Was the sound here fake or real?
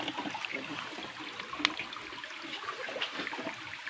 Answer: real